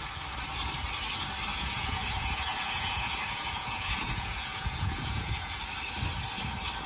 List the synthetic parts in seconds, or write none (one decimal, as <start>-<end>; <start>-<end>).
1.5-5.6